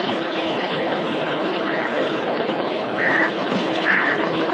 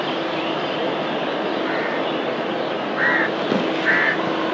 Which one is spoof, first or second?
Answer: first